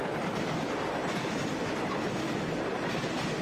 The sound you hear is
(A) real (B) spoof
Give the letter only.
A